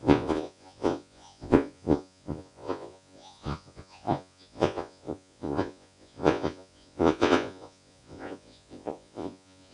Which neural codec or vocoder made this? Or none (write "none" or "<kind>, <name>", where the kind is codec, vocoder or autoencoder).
vocoder, Vocos